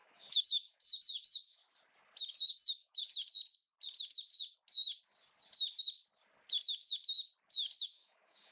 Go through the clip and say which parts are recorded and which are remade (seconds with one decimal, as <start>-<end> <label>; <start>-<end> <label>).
0.0-1.6 remade; 1.6-2.5 recorded; 2.5-3.1 remade; 3.1-7.8 recorded; 7.8-8.5 remade